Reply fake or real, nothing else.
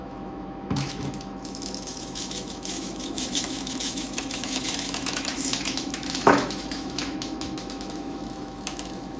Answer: fake